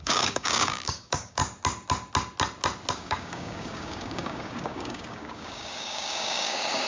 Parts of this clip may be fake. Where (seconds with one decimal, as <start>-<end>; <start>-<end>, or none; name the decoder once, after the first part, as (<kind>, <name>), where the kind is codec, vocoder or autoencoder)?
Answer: 0.0-1.4 (codec, DAC); 2.9-6.9